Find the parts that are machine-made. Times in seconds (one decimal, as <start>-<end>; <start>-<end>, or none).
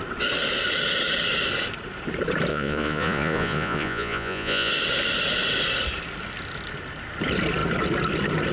2.5-4.7